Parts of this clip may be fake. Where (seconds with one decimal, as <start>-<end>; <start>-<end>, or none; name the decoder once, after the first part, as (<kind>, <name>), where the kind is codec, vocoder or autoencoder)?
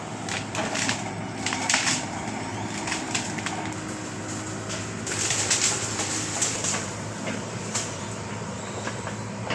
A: 0.0-0.6 (vocoder, BigVGAN v2); 1.6-2.5; 5.1-9.5